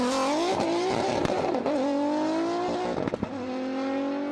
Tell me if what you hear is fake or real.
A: real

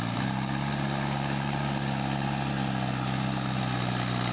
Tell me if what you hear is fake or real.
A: real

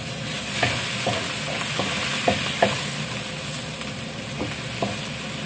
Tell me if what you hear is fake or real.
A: real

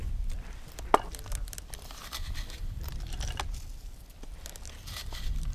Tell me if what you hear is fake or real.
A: fake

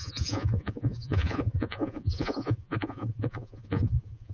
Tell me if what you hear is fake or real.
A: fake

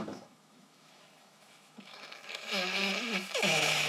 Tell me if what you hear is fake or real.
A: fake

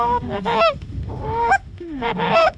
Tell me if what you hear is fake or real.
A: fake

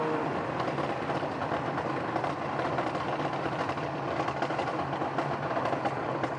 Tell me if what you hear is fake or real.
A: fake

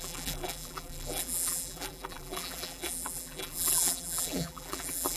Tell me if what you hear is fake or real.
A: fake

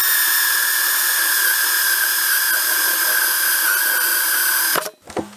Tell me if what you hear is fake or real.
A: real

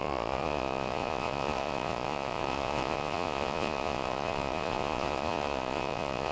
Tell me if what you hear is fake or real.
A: fake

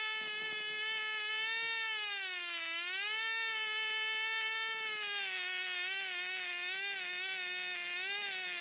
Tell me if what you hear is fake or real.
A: real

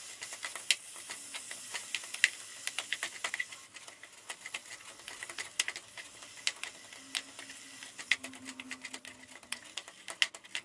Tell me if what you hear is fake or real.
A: real